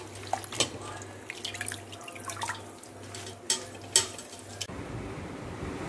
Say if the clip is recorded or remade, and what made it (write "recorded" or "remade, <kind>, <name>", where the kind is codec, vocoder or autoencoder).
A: recorded